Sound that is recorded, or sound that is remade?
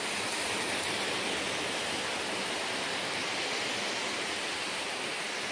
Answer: recorded